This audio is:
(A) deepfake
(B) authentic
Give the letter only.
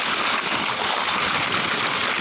B